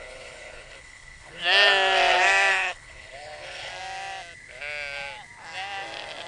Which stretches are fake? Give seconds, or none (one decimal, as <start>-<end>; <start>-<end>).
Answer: 0.0-1.4; 2.5-3.7